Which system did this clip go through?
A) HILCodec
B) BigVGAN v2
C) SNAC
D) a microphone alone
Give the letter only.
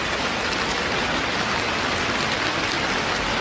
D